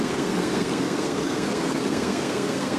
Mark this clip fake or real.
fake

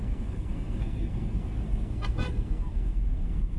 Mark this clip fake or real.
fake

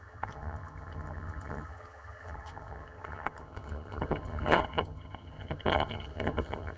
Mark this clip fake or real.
fake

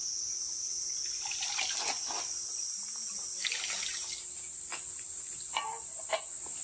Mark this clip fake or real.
real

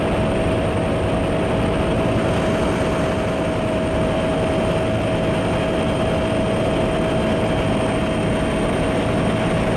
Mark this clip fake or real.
real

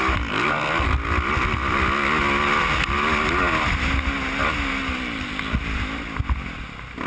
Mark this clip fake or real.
real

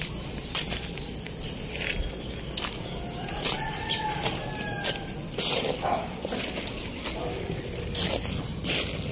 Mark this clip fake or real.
real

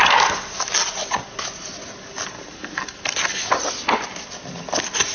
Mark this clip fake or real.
real